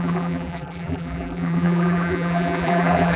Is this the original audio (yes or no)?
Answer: no